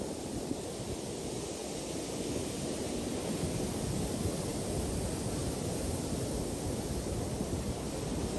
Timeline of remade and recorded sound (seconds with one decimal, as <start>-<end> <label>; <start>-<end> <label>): 0.0-8.4 recorded